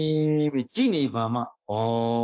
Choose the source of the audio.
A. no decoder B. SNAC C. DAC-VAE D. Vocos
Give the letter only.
C